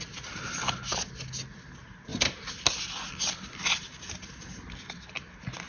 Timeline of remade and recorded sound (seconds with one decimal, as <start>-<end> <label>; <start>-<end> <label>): 0.0-5.7 recorded